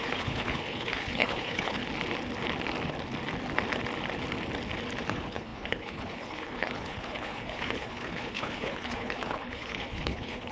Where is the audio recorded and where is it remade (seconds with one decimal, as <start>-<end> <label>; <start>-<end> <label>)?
0.0-1.8 remade; 1.8-5.1 recorded; 5.1-10.5 remade